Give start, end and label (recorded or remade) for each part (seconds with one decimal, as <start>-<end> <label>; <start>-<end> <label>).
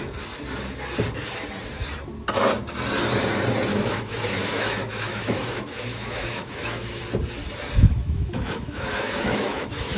0.0-3.7 recorded; 3.7-7.0 remade; 7.0-7.8 recorded; 7.8-10.0 remade